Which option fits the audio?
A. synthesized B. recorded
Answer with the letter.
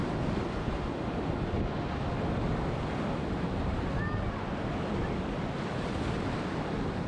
B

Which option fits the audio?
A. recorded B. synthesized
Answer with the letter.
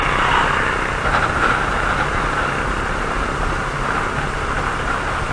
A